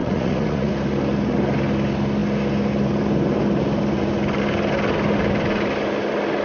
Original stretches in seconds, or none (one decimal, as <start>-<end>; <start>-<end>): 0.7-6.4